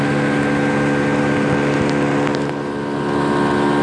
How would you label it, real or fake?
real